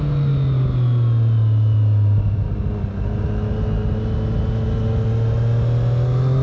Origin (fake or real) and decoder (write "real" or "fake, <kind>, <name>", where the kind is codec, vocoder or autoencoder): real